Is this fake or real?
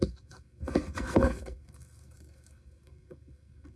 fake